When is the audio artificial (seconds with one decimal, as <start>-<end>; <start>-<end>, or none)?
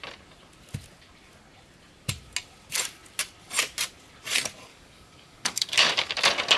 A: 4.7-6.1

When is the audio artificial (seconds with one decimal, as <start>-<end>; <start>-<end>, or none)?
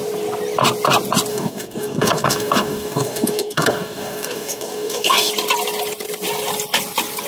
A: 1.3-5.3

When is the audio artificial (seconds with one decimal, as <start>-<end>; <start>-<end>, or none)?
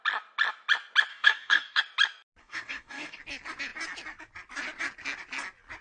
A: 1.1-1.8; 2.4-3.2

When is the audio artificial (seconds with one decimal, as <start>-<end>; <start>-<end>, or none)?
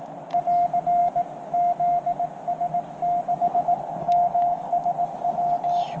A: 4.0-4.7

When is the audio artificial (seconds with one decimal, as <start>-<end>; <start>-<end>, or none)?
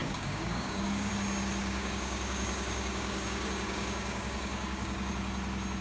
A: 0.0-1.1; 1.6-5.1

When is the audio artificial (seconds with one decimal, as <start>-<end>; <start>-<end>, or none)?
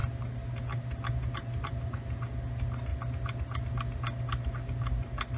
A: none